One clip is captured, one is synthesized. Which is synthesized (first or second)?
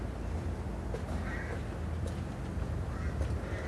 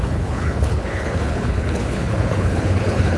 second